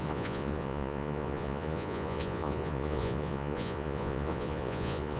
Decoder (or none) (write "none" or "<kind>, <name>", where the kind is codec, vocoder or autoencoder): vocoder, Vocos